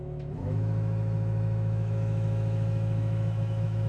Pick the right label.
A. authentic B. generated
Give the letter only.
B